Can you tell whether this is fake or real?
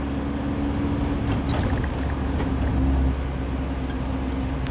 real